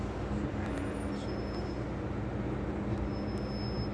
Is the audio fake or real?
real